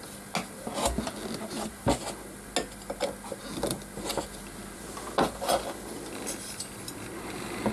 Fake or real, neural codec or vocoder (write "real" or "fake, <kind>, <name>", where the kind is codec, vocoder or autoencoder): real